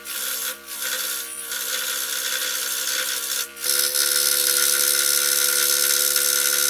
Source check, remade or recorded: recorded